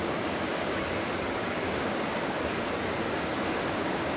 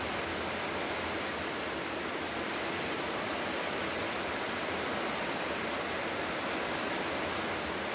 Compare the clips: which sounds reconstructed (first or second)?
first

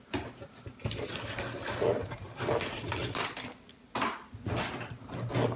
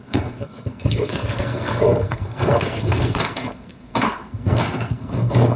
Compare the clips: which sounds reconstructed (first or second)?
second